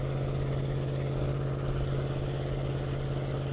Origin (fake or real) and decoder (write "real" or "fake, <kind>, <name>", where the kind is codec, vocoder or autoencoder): real